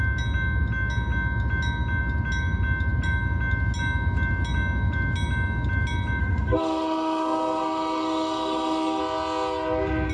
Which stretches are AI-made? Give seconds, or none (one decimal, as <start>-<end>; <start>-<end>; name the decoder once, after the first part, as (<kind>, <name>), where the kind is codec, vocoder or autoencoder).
6.2-9.0 (codec, SNAC)